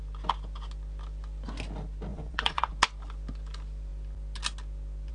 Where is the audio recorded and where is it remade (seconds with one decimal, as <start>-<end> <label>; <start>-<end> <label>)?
0.0-2.1 recorded; 2.1-2.7 remade; 2.7-5.1 recorded